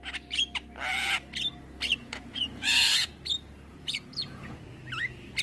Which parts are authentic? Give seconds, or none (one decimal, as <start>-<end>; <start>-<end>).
0.0-2.0; 3.1-3.7; 4.6-5.4